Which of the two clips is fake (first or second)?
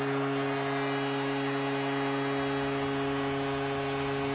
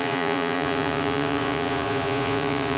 second